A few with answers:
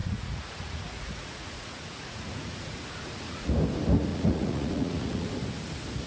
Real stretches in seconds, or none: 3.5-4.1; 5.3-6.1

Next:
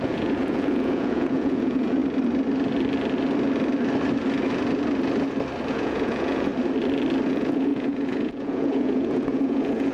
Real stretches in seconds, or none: 2.0-5.7; 6.5-7.3